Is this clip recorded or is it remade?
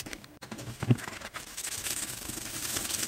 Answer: remade